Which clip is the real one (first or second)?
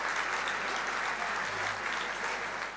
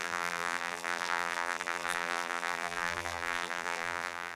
first